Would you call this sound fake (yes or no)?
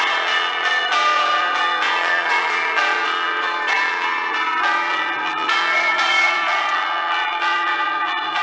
yes